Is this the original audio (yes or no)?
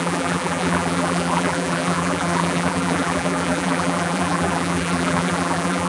no